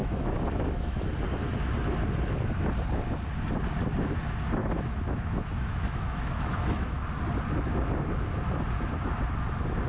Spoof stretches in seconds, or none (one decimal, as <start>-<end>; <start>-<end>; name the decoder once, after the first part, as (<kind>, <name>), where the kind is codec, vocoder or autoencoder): 0.0-1.0 (autoencoder, DAC-VAE); 4.6-7.0